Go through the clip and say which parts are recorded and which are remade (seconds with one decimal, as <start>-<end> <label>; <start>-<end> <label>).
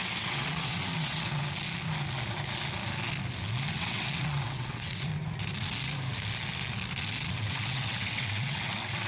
0.0-1.4 remade; 1.4-3.8 recorded; 3.8-5.1 remade; 5.1-7.4 recorded; 7.4-9.1 remade